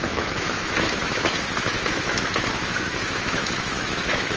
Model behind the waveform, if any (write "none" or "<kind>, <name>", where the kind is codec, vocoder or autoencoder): autoencoder, DAC-VAE